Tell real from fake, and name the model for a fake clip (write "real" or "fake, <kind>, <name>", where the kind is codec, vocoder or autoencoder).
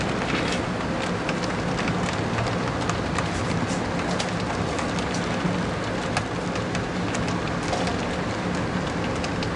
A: real